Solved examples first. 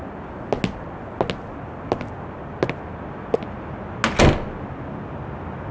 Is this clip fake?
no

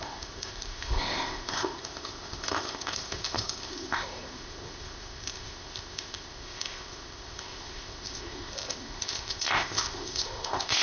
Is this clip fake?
yes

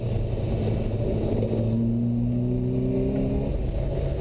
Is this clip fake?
no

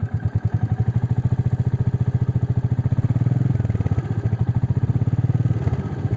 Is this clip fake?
no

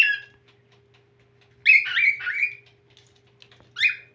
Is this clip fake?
no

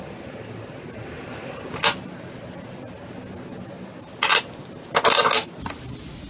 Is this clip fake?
no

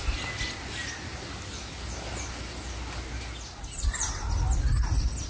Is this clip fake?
no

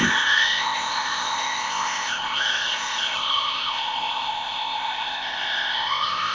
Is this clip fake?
yes